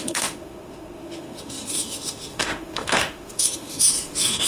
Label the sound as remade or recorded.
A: remade